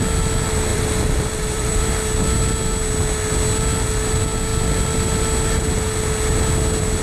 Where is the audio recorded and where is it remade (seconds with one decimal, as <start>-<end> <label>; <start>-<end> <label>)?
0.0-0.7 recorded; 0.7-1.8 remade; 1.8-7.0 recorded